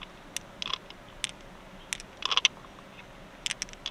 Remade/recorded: recorded